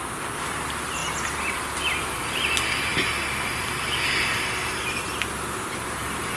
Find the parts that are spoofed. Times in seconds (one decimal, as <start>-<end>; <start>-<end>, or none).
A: none